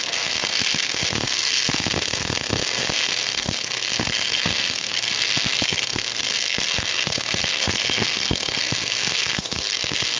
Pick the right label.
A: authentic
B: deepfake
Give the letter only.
B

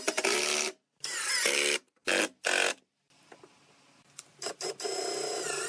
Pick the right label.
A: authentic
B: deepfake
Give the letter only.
A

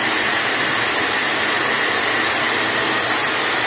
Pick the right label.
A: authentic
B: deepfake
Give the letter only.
A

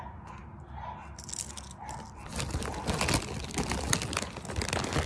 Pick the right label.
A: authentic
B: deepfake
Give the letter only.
A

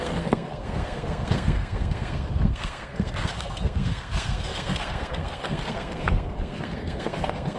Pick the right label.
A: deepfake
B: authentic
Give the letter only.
A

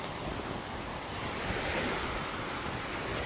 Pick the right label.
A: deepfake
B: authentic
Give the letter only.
B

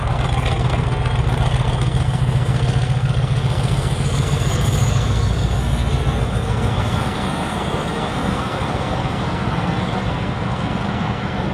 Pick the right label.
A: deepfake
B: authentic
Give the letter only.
A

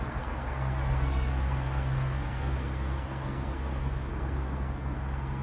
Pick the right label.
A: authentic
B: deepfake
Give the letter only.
B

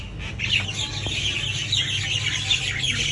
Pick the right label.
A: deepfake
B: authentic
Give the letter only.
B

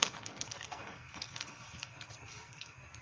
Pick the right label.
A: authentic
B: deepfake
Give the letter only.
B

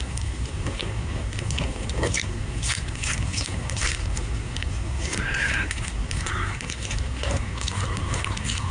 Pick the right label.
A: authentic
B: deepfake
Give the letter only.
B